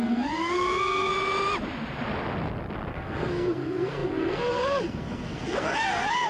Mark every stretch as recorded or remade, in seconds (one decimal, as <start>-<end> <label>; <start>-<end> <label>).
0.0-1.1 remade; 1.1-2.9 recorded; 2.9-6.3 remade